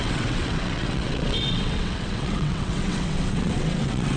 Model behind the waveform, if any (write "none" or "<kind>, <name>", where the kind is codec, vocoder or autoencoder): vocoder, WaveNeXt